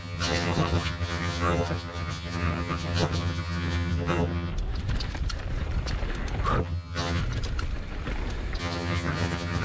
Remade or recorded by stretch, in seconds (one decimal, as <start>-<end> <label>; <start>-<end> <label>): 0.0-4.5 remade; 4.5-6.6 recorded; 6.6-7.2 remade; 7.2-8.6 recorded; 8.6-9.6 remade